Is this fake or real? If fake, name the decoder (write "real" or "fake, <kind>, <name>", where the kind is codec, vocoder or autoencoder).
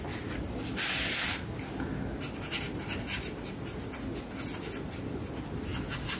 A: real